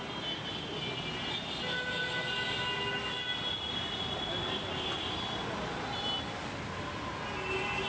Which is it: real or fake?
real